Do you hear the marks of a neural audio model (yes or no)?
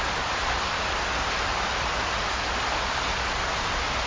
yes